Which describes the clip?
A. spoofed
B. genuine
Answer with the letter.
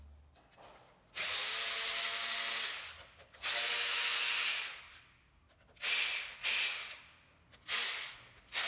B